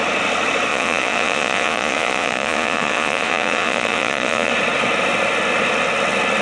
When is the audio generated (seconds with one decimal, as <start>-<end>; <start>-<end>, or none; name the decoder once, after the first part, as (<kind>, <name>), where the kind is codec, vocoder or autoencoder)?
0.7-4.5 (vocoder, Vocos)